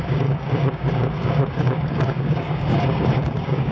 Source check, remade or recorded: remade